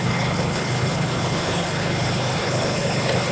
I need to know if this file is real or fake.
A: fake